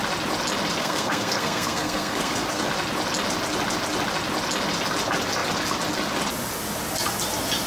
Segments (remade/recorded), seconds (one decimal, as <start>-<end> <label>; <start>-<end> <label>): 0.0-0.8 recorded; 0.8-2.7 remade; 2.7-7.7 recorded